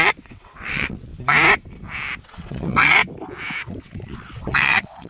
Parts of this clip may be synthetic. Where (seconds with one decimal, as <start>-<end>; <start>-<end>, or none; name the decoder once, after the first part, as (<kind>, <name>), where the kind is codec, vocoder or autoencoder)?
0.0-1.1 (vocoder, WaveNeXt); 2.2-3.0; 3.7-5.1